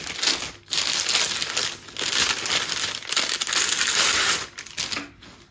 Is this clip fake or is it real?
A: real